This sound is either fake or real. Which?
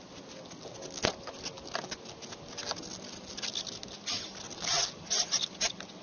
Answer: real